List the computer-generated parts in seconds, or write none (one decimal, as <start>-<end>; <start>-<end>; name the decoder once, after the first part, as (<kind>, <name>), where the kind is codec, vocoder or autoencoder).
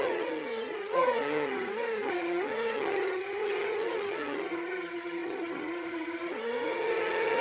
0.0-7.4 (vocoder, HiFi-GAN)